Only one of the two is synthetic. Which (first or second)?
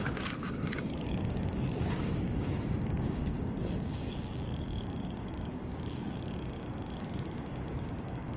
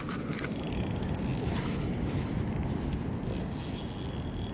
first